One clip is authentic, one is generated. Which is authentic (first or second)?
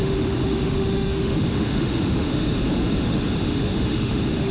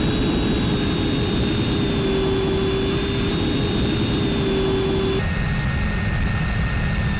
second